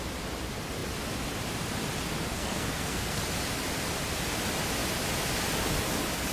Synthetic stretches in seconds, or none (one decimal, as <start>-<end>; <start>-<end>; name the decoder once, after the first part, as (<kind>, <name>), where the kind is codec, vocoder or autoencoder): 2.3-3.2 (codec, SNAC)